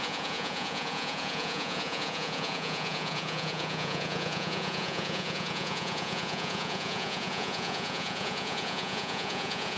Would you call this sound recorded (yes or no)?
no